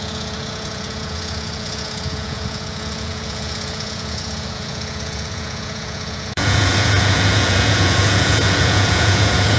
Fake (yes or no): yes